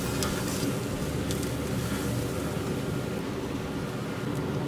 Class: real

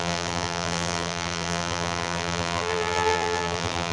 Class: fake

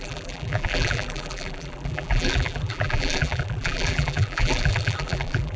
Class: fake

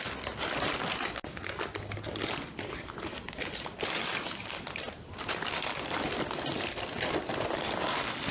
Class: real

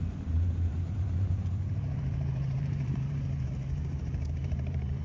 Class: fake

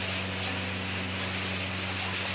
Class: real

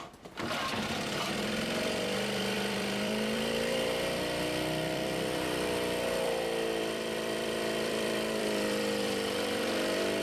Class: fake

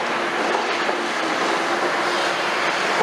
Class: real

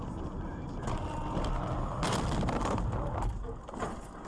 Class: real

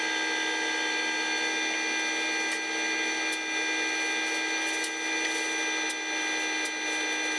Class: real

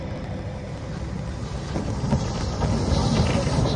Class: real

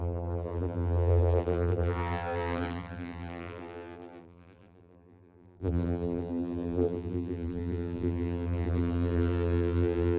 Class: fake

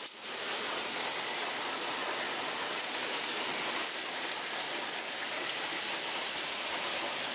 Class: fake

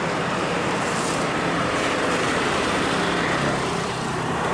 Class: fake